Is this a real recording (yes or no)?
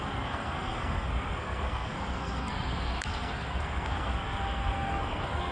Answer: no